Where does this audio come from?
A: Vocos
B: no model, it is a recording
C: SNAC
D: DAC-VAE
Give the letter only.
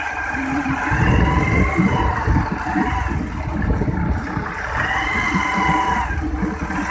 B